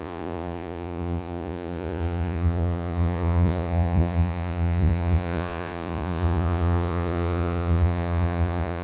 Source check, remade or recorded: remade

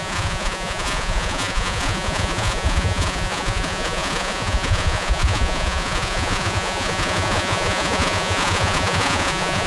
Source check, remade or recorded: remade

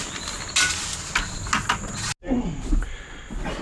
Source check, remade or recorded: recorded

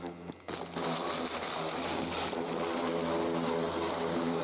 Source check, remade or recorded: recorded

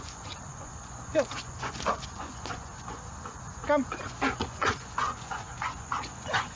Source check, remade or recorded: remade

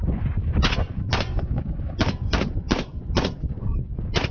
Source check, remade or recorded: remade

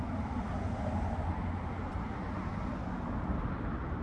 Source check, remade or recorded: recorded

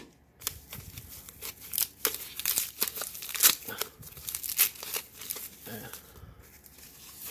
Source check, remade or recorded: recorded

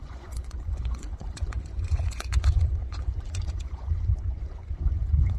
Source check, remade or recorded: remade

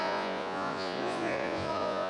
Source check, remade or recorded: remade